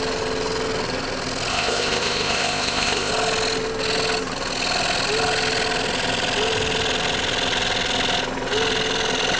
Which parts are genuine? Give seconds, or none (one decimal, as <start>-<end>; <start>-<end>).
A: 0.0-1.5; 3.1-9.4